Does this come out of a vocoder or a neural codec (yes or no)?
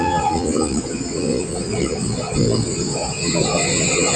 yes